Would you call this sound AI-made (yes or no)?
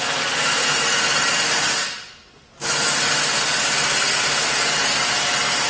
no